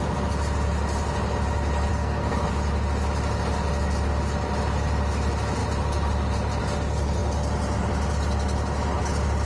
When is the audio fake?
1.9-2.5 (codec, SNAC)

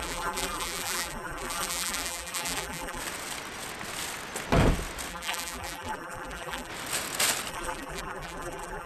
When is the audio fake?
0.0-3.0 (vocoder, BigVGAN v2); 5.1-6.7; 7.5-8.9